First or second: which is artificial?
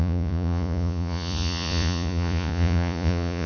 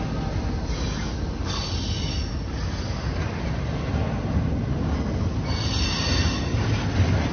first